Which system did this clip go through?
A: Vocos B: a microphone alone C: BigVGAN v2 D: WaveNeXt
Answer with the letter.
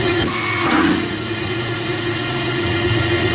A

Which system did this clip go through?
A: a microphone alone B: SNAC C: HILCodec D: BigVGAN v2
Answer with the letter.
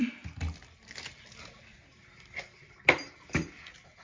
A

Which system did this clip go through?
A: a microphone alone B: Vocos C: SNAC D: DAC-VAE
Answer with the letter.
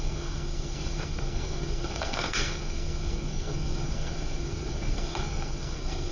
C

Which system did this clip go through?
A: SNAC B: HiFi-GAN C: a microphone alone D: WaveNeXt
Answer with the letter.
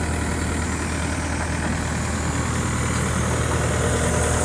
C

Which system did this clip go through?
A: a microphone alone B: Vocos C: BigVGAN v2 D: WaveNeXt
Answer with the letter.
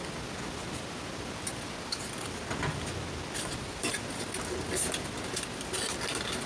A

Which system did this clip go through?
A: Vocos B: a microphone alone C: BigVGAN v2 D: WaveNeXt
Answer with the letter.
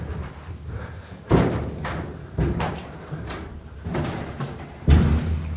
C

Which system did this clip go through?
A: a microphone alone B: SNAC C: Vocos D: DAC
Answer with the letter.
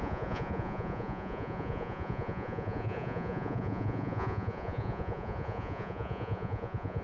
C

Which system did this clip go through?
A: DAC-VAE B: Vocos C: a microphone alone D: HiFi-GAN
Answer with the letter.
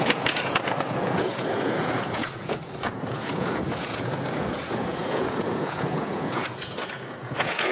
B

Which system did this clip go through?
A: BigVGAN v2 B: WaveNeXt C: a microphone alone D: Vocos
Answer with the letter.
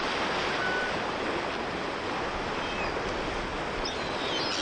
C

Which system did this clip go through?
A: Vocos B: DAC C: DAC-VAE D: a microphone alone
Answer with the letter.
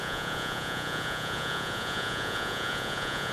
A